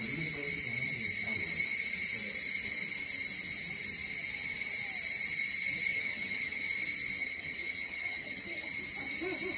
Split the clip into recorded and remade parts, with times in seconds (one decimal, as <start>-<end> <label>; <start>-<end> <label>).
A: 0.0-5.9 recorded; 5.9-6.6 remade; 6.6-7.2 recorded; 7.2-8.7 remade; 8.7-9.6 recorded